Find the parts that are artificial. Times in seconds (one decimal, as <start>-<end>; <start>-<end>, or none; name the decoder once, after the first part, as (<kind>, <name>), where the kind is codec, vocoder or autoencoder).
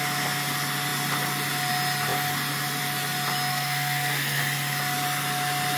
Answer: 3.5-4.4 (codec, SNAC)